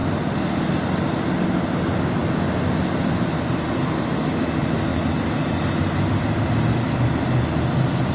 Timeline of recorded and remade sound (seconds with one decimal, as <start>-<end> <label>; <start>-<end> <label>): 0.0-8.1 recorded